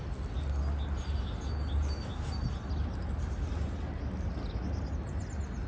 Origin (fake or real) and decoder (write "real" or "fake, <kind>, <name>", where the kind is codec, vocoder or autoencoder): real